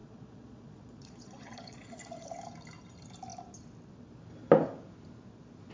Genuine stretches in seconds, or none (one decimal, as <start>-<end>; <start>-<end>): 2.4-5.7